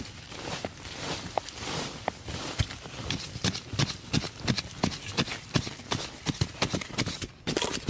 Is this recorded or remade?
recorded